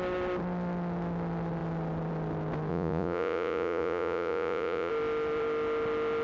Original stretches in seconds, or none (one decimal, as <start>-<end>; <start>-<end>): 0.0-2.7; 4.9-6.2